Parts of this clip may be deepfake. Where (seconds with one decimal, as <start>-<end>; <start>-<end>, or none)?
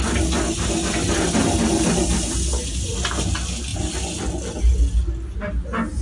none